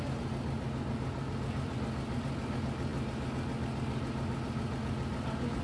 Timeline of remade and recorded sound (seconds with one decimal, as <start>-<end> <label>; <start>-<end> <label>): 0.0-5.6 recorded